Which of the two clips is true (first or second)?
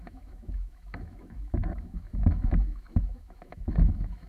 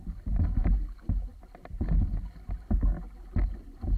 second